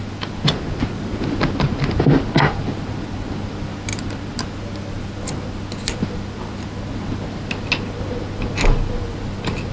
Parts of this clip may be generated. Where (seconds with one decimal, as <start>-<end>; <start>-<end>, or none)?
none